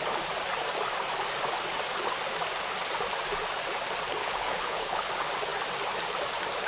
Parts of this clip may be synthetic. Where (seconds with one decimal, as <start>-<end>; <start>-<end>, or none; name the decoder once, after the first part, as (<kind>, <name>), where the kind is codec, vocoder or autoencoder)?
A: 4.2-5.1 (codec, HILCodec)